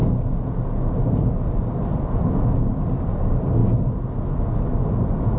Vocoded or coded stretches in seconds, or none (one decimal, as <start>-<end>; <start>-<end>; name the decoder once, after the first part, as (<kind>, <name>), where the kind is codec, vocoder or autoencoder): 1.3-3.6 (vocoder, BigVGAN v2); 4.8-5.4